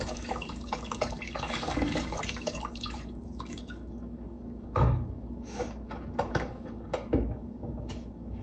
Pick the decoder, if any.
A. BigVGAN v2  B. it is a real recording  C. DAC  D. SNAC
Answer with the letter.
C